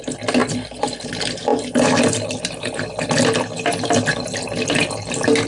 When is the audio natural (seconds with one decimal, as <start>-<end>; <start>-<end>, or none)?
0.0-5.5